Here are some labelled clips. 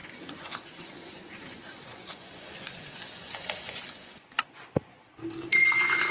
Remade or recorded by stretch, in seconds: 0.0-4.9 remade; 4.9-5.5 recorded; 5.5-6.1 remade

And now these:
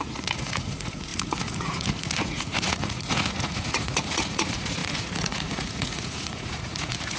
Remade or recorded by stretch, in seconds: 0.0-7.2 remade

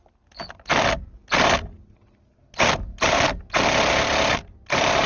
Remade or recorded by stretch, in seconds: 0.0-5.1 recorded

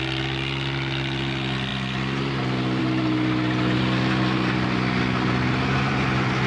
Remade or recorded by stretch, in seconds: 0.0-6.5 recorded

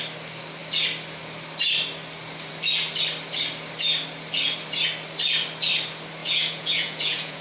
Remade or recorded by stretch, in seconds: 0.0-6.2 recorded; 6.2-7.4 remade